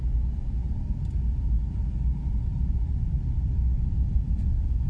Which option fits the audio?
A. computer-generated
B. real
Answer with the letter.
B